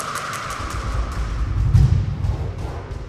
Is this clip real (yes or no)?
yes